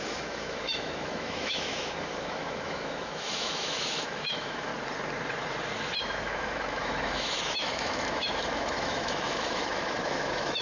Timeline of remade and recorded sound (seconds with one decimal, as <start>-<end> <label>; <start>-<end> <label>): 0.0-4.7 remade; 4.7-6.0 recorded; 6.0-10.6 remade